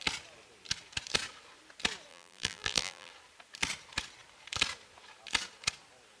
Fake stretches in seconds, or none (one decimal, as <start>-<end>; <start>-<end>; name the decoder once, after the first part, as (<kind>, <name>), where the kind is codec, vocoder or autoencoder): 2.1-3.1 (vocoder, BigVGAN v2)